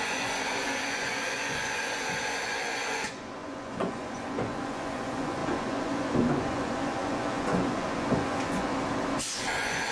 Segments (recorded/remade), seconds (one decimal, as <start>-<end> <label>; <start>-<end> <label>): 0.0-8.7 remade; 8.7-9.2 recorded; 9.2-9.9 remade